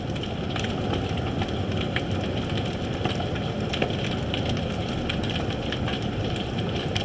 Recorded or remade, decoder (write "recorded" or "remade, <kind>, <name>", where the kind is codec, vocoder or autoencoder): recorded